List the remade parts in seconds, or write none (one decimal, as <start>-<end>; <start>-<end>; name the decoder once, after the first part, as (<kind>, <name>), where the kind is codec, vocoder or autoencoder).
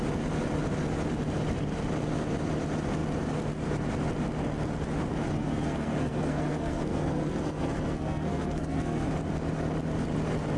5.3-9.1 (codec, SNAC)